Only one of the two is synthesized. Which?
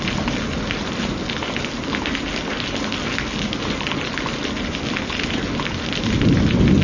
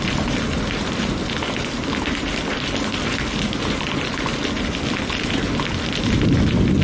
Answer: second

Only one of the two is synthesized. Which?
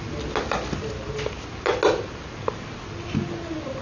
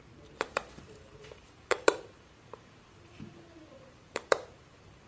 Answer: second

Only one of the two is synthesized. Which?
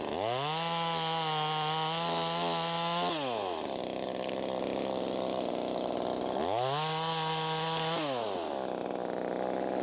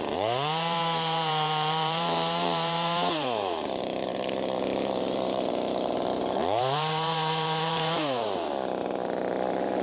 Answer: second